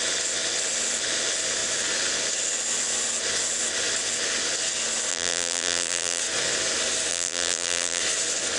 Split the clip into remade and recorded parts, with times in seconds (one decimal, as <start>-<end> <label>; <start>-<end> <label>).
0.0-5.1 recorded; 5.1-6.2 remade; 6.2-7.1 recorded; 7.1-8.0 remade; 8.0-8.6 recorded

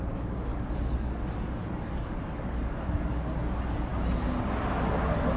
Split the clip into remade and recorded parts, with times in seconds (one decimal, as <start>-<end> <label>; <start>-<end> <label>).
0.0-0.5 recorded; 0.5-3.2 remade; 3.2-5.4 recorded

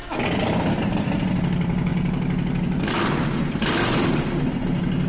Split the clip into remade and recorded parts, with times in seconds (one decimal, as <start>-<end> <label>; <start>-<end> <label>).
0.0-5.1 recorded

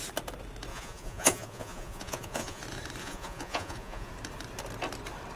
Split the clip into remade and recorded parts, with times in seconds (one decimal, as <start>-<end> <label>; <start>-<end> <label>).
0.0-0.7 recorded; 0.7-2.6 remade; 2.6-3.0 recorded; 3.0-4.1 remade; 4.1-5.4 recorded

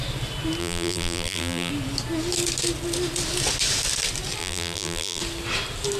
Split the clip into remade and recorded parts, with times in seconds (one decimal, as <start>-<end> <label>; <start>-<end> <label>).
0.0-0.6 recorded; 0.6-1.7 remade; 1.7-4.4 recorded; 4.4-5.2 remade; 5.2-6.0 recorded